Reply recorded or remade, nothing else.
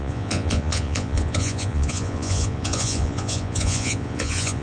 remade